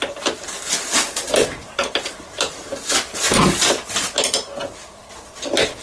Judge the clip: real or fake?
real